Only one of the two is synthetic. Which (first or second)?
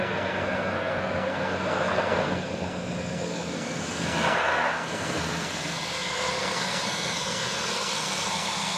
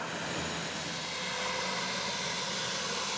first